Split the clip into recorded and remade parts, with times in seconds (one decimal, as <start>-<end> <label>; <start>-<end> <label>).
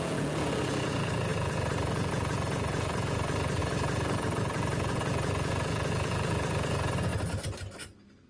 0.0-7.1 remade; 7.1-8.3 recorded